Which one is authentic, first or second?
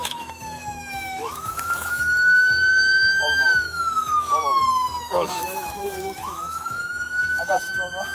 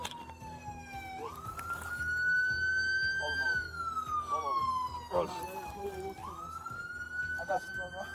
second